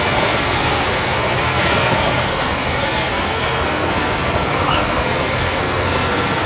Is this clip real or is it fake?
fake